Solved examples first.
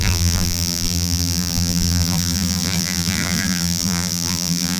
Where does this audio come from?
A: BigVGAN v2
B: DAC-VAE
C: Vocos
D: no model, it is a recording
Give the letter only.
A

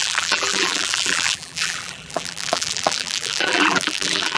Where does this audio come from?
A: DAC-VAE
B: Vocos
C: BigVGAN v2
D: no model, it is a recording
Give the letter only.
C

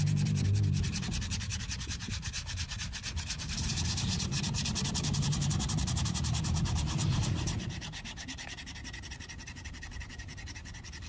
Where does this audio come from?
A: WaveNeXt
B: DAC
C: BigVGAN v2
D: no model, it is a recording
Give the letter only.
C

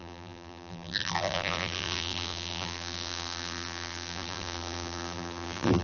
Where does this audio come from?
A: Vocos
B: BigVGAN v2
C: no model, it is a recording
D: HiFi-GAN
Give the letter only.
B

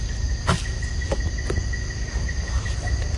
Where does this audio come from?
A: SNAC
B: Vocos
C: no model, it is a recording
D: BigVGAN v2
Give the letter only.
C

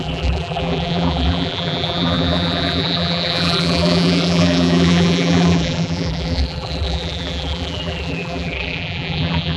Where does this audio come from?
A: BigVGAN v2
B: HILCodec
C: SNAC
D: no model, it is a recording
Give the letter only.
A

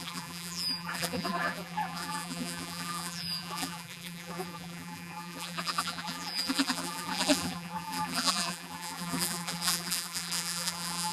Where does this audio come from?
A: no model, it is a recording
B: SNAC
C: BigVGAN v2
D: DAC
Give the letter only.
C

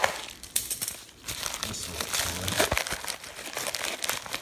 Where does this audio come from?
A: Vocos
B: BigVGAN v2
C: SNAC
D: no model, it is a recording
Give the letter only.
D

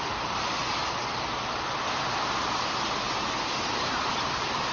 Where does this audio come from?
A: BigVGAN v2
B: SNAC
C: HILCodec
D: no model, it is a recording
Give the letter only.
A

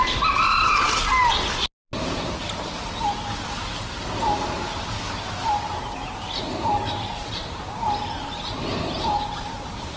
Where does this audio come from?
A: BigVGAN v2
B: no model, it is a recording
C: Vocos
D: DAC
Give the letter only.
B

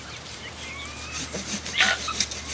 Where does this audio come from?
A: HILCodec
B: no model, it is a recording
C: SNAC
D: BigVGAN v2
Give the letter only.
D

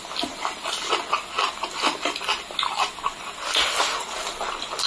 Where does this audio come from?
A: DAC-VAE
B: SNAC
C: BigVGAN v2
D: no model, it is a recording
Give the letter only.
D